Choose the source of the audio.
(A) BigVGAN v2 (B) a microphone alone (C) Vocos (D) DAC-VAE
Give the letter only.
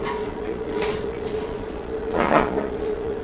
C